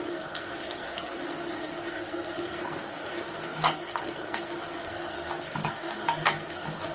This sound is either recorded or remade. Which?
remade